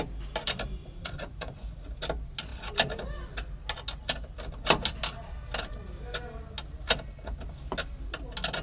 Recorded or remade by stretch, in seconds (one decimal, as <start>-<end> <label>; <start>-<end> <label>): 0.0-0.8 recorded; 0.8-1.9 remade; 1.9-8.6 recorded